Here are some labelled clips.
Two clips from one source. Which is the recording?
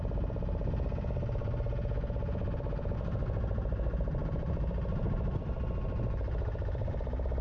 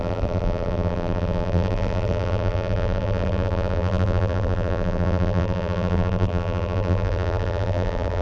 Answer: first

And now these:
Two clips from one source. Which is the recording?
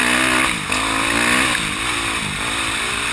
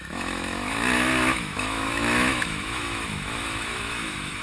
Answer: first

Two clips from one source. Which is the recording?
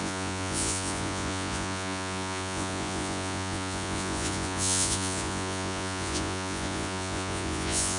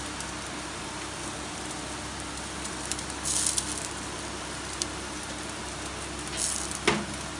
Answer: second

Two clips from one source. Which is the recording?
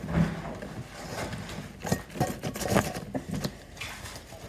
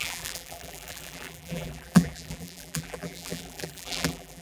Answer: first